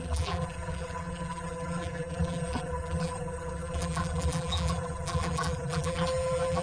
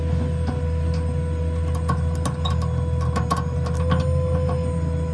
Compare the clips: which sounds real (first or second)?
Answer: second